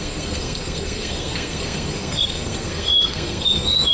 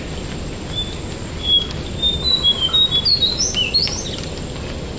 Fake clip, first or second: first